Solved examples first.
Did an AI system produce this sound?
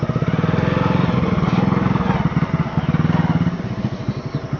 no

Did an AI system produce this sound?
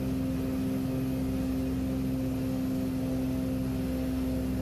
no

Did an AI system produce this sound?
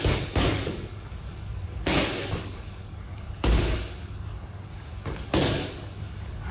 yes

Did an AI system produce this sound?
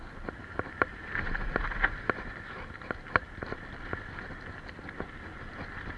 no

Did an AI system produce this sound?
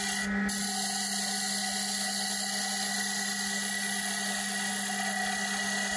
no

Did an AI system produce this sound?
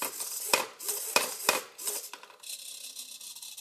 no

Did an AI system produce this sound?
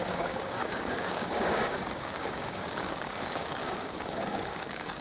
yes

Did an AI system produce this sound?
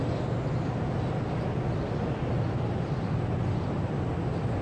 no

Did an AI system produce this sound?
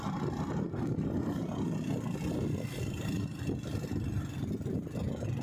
no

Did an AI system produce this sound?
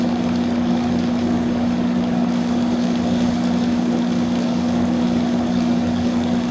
yes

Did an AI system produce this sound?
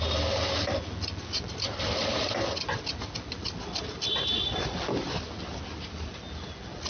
no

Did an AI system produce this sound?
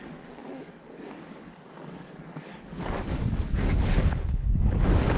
yes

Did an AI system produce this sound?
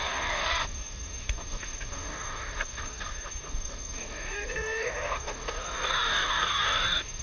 yes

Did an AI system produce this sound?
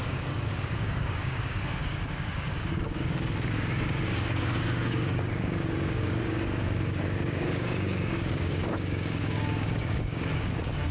yes